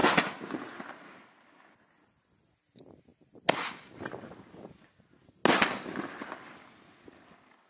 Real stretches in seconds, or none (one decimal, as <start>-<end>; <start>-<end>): 0.0-1.5; 3.1-4.2; 5.4-6.0